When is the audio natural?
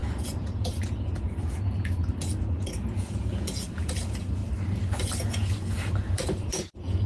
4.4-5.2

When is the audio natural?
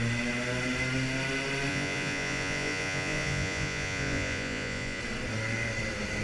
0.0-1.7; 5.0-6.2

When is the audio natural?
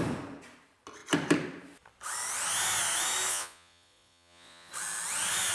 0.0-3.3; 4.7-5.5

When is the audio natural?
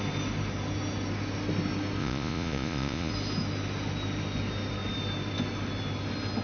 0.0-2.0; 3.1-6.4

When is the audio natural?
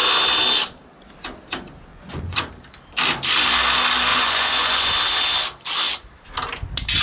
0.0-1.9; 2.5-4.1; 4.9-7.0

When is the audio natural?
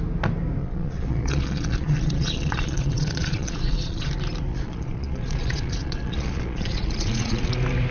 0.0-0.6; 4.1-4.5; 7.5-7.9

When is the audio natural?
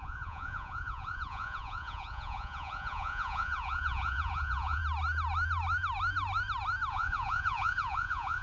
4.8-6.9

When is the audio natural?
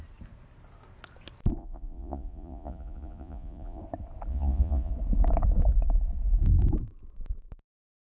0.0-1.6; 3.8-4.3; 4.9-8.1